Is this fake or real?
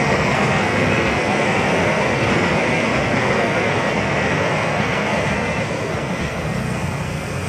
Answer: fake